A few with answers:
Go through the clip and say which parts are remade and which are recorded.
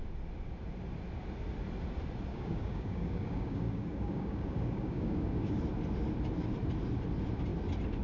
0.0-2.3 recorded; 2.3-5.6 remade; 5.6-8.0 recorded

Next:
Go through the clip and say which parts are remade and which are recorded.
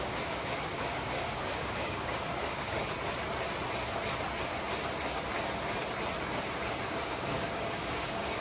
0.0-2.8 remade; 2.8-6.9 recorded; 6.9-8.4 remade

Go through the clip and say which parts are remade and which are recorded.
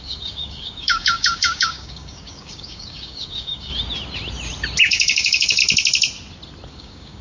0.0-3.7 remade; 3.7-4.8 recorded; 4.8-5.6 remade; 5.6-6.7 recorded; 6.7-7.2 remade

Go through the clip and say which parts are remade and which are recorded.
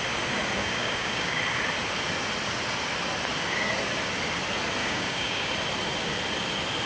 0.0-0.6 recorded; 0.6-1.4 remade; 1.4-4.8 recorded; 4.8-5.5 remade; 5.5-6.9 recorded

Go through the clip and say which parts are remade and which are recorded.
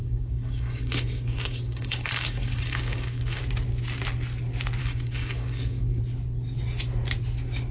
0.0-3.4 remade; 3.4-4.8 recorded; 4.8-6.0 remade; 6.0-7.7 recorded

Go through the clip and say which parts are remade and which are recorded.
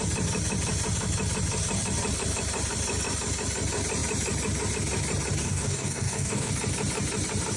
0.0-5.4 recorded; 5.4-6.5 remade; 6.5-7.6 recorded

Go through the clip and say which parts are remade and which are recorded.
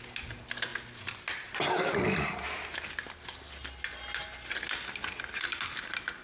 0.0-6.2 recorded